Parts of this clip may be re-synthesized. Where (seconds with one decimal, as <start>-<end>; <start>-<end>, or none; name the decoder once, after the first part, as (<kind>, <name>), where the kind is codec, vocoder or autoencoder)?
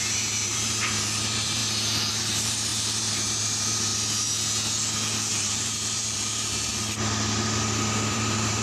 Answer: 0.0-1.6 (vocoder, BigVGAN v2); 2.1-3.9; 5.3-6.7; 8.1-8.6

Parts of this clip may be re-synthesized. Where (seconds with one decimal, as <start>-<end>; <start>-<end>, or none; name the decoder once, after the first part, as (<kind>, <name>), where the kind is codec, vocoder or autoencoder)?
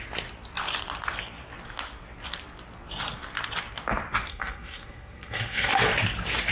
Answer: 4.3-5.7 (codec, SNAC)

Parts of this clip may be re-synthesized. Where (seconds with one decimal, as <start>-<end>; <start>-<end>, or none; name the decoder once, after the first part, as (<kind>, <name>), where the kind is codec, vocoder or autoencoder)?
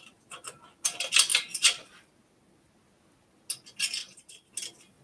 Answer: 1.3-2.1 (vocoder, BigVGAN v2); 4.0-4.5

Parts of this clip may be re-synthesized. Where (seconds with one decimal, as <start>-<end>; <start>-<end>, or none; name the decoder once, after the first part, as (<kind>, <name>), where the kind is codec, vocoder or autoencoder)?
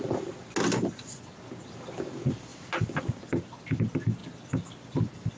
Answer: none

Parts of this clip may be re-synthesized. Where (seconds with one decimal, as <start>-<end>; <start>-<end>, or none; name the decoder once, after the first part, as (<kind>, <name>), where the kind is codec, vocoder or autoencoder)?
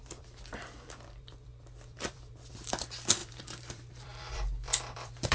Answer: 0.0-5.3 (vocoder, BigVGAN v2)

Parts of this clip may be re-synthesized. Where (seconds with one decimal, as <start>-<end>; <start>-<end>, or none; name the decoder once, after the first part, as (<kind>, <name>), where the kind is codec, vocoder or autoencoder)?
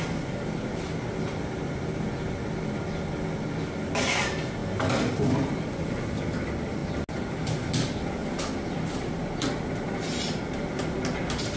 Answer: none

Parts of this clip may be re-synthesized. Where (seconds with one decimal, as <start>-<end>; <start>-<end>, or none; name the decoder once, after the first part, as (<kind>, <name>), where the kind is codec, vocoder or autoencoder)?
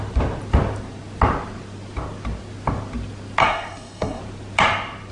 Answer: 3.4-4.2 (codec, SNAC)